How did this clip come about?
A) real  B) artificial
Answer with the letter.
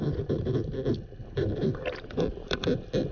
A